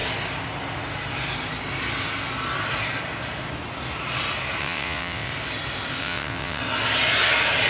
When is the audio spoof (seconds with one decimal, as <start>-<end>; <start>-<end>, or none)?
4.6-5.3; 6.0-6.6